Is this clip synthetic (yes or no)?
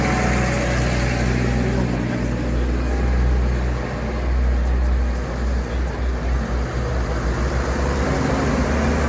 no